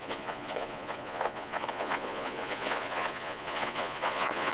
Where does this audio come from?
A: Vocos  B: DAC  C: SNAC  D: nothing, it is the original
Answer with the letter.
A